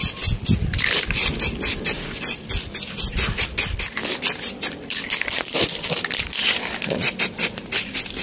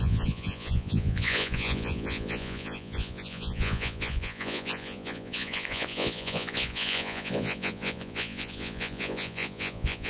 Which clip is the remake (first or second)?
second